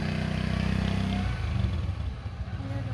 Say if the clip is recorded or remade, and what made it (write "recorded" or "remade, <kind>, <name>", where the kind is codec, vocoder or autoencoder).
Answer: recorded